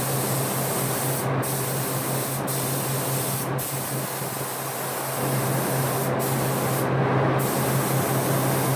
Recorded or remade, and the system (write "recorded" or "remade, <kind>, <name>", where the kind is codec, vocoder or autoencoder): recorded